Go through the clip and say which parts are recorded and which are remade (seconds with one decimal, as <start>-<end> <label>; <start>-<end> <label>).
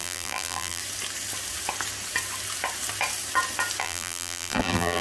0.0-0.8 remade; 0.8-3.8 recorded; 3.8-5.0 remade